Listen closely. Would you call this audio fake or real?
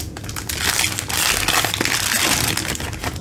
real